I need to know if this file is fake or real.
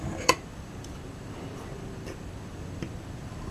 fake